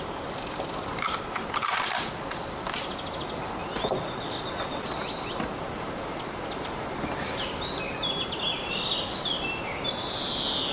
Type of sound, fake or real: real